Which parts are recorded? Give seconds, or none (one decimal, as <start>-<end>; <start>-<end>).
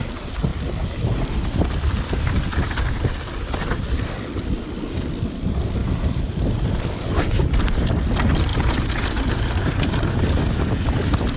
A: 0.0-5.8; 6.4-11.4